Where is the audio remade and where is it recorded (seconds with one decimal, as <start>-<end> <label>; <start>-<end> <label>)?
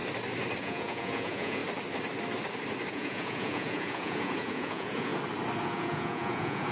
0.0-0.6 recorded; 0.6-1.6 remade; 1.6-2.9 recorded; 2.9-5.1 remade; 5.1-5.6 recorded; 5.6-6.7 remade